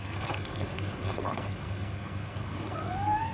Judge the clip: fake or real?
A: fake